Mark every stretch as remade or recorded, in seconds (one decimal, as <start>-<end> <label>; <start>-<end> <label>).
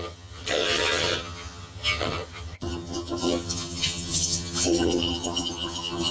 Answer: 0.0-6.1 remade